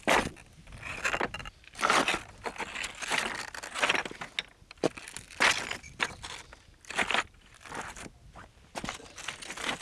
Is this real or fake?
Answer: real